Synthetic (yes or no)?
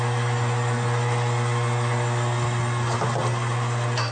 no